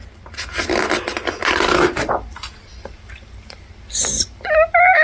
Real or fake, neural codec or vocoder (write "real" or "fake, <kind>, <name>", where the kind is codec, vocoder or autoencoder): real